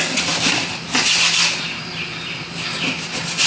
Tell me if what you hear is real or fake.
fake